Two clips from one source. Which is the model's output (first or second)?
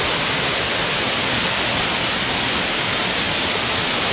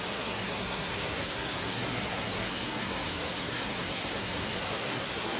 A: second